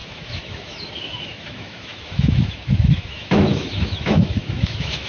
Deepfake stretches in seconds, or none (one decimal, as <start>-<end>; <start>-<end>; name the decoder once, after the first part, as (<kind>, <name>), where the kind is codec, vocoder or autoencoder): 0.0-5.1 (autoencoder, DAC-VAE)